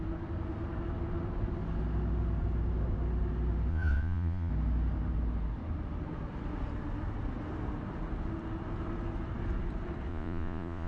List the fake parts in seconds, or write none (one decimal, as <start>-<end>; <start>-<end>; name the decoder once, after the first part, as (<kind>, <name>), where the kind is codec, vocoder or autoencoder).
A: 3.7-4.5 (vocoder, Vocos); 10.1-10.9